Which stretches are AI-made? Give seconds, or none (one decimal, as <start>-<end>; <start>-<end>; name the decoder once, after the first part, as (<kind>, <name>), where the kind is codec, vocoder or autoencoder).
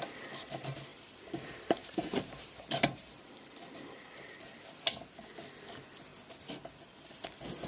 0.9-4.6 (vocoder, BigVGAN v2)